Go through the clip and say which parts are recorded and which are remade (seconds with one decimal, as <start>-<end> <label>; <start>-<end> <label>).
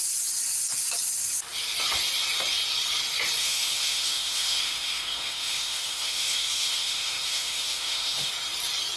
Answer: 0.0-3.4 recorded; 3.4-8.3 remade; 8.3-9.0 recorded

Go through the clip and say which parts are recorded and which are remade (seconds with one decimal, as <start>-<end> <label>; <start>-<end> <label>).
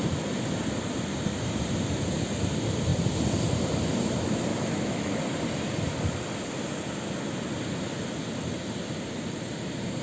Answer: 0.0-4.5 recorded; 4.5-5.2 remade; 5.2-10.0 recorded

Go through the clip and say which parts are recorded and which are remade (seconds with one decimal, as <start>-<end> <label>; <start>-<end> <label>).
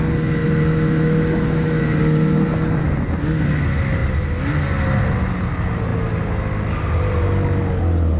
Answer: 0.0-0.4 recorded; 0.4-1.8 remade; 1.8-8.2 recorded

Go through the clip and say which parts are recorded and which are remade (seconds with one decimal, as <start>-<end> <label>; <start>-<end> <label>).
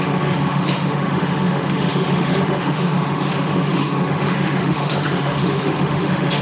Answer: 0.0-6.4 remade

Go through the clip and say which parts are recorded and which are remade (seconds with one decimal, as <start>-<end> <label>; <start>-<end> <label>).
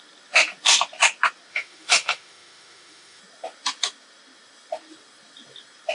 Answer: 0.0-1.5 recorded; 1.5-3.2 remade; 3.2-5.9 recorded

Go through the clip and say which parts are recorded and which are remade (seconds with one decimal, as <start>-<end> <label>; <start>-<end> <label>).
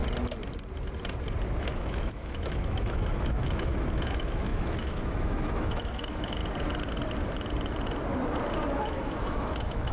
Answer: 0.0-1.6 recorded; 1.6-6.4 remade; 6.4-8.7 recorded; 8.7-9.9 remade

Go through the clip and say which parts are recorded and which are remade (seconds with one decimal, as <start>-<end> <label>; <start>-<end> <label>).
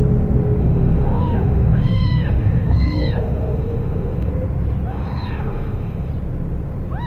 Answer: 0.0-0.6 recorded; 0.6-4.3 remade; 4.3-4.9 recorded; 4.9-6.1 remade; 6.1-7.1 recorded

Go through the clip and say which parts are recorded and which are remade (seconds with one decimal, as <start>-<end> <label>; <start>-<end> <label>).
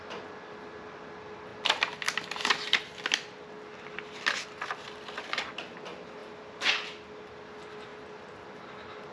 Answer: 0.0-9.1 recorded